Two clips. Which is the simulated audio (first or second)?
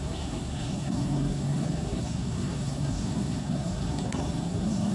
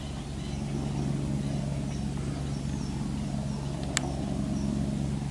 first